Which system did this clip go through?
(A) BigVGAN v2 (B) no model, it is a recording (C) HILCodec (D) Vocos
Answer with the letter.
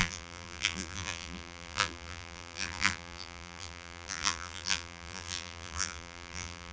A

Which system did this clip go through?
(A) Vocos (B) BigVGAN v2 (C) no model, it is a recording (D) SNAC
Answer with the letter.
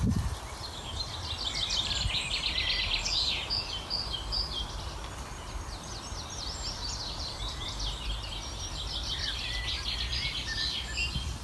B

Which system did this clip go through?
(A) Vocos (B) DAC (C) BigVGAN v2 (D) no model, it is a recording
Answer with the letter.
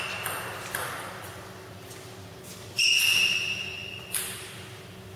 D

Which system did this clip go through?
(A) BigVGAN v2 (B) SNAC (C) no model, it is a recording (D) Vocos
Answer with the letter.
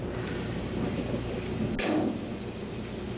C